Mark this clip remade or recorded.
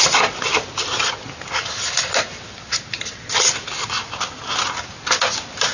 recorded